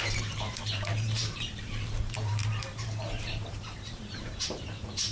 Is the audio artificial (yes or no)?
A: yes